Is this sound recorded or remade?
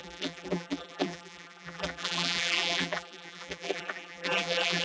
remade